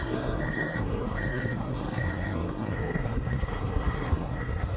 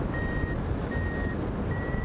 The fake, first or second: first